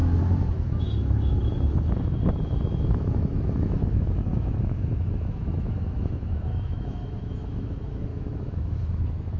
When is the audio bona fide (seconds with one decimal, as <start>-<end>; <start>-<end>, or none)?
0.0-0.5